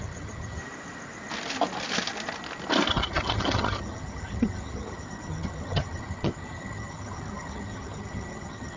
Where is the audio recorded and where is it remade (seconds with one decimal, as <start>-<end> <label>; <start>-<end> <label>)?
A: 0.0-0.6 remade; 0.6-2.9 recorded; 2.9-8.8 remade